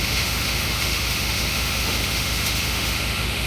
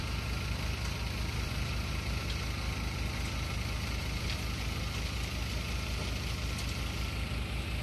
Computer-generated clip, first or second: first